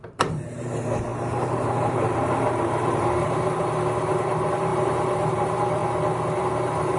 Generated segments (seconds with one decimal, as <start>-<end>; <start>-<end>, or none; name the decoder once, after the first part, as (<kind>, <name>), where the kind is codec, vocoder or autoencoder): 0.0-5.8 (vocoder, BigVGAN v2); 6.4-7.0